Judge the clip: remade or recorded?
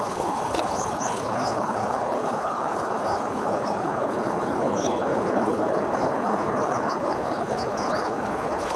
remade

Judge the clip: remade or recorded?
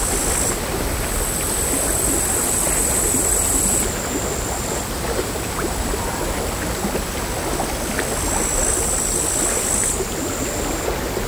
recorded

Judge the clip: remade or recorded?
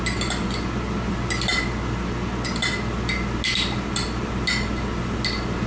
recorded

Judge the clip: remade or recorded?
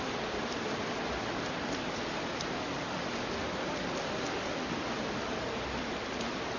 recorded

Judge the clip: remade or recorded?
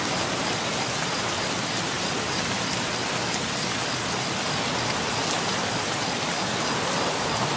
recorded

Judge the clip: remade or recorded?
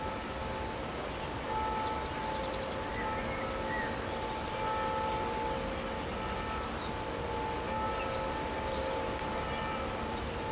recorded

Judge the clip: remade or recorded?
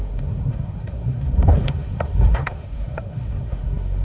remade